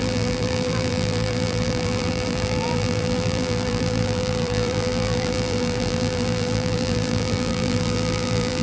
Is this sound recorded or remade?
remade